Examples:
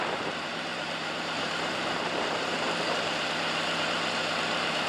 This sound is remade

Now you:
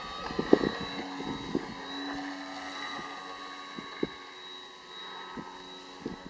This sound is recorded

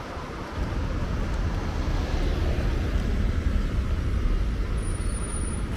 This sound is recorded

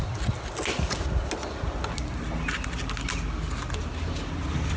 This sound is recorded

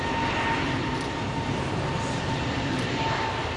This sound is recorded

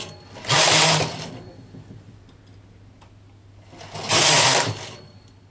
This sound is recorded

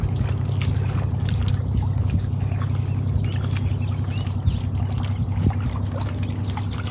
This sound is recorded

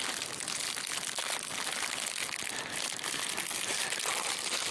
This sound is recorded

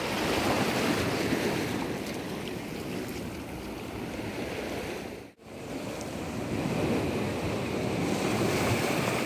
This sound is recorded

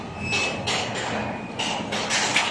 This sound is recorded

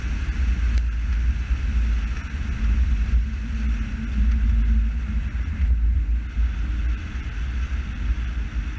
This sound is recorded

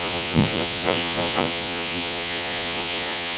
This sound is remade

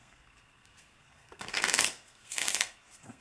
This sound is remade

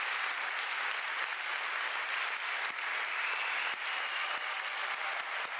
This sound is recorded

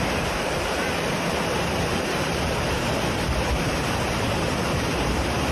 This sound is remade